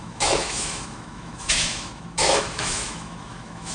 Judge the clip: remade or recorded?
remade